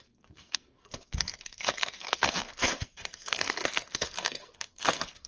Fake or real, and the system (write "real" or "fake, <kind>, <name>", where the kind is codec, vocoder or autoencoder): fake, codec, SNAC